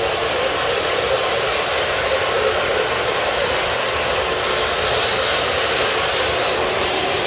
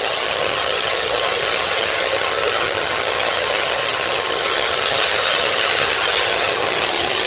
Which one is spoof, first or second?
second